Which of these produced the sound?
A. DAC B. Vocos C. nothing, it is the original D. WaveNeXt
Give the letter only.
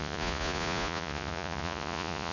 B